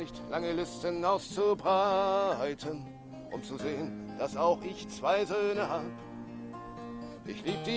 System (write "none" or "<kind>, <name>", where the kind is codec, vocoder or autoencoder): none